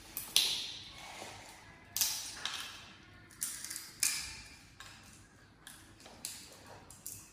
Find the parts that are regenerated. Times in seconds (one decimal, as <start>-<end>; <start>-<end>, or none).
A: none